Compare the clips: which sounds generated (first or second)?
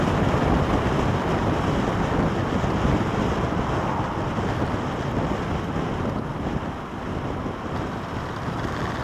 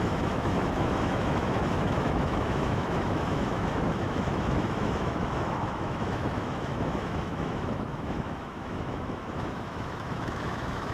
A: second